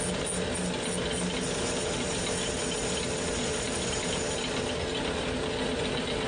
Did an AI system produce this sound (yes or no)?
no